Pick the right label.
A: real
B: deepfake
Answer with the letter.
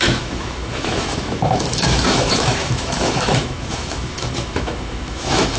B